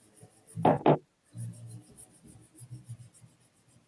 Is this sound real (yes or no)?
yes